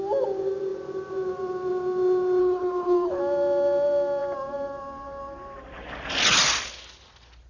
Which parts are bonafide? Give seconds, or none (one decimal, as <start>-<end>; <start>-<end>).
0.0-2.4; 3.2-7.5